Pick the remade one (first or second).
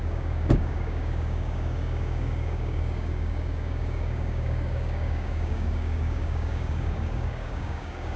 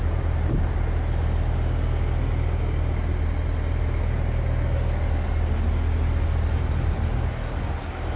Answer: first